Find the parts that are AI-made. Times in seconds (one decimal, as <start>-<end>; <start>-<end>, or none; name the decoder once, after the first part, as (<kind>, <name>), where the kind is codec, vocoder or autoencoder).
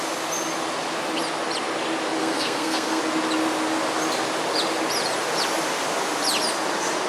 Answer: 2.2-3.0 (codec, SNAC)